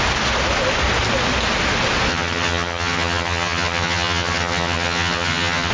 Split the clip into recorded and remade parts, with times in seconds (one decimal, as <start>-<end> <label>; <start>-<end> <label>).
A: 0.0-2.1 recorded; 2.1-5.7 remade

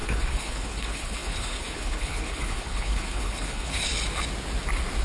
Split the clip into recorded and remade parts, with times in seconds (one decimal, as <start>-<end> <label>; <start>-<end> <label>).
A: 0.0-3.9 remade; 3.9-5.0 recorded

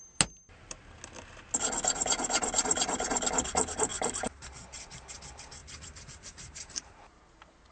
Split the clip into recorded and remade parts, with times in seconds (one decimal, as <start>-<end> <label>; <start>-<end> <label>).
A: 0.0-3.9 recorded; 3.9-4.4 remade; 4.4-5.6 recorded; 5.6-7.2 remade; 7.2-7.7 recorded

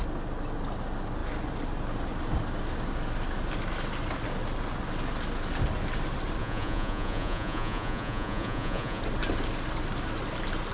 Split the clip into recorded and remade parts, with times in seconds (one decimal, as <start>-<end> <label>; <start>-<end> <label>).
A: 0.0-6.4 recorded; 6.4-9.0 remade; 9.0-10.7 recorded